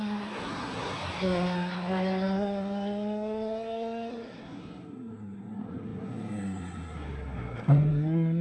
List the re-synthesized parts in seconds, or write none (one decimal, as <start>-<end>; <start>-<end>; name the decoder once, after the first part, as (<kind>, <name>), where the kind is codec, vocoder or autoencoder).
0.0-8.4 (codec, SNAC)